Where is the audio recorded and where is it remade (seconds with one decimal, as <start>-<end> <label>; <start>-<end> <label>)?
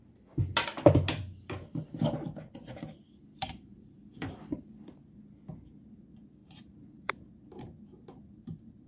0.0-3.3 recorded; 3.3-5.0 remade; 5.0-6.4 recorded; 6.4-7.3 remade; 7.3-8.9 recorded